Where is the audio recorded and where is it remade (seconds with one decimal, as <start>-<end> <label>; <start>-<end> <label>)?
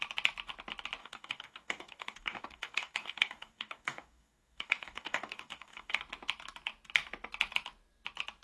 0.0-1.0 recorded; 1.0-6.0 remade; 6.0-8.4 recorded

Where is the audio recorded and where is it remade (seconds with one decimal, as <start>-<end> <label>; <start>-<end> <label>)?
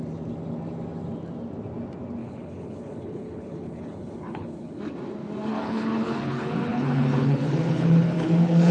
0.0-2.2 recorded; 2.2-4.8 remade; 4.8-5.5 recorded; 5.5-8.7 remade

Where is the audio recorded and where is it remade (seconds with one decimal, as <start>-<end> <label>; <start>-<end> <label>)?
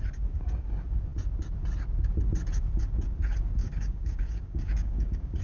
0.0-3.6 recorded; 3.6-5.4 remade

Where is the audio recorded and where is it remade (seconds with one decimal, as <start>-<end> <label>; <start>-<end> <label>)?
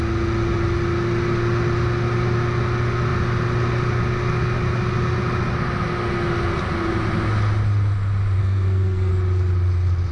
0.0-8.4 recorded; 8.4-9.1 remade; 9.1-10.1 recorded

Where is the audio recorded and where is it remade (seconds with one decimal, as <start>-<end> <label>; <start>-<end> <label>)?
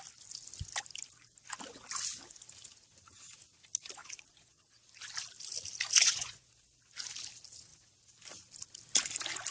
0.0-4.0 recorded; 4.0-4.6 remade; 4.6-5.9 recorded; 5.9-6.8 remade; 6.8-9.5 recorded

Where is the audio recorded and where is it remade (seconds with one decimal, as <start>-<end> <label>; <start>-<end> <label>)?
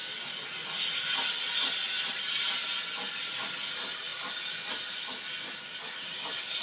0.0-6.6 recorded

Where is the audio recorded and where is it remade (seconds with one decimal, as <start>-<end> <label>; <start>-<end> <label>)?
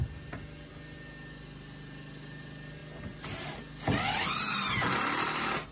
0.0-5.7 recorded